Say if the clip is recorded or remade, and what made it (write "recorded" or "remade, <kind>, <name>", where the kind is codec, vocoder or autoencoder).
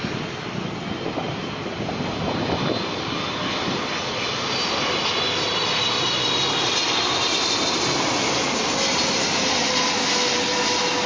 recorded